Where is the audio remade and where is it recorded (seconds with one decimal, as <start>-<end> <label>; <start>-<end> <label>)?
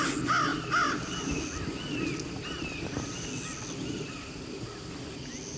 0.0-5.6 recorded